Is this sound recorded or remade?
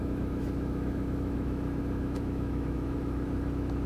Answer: remade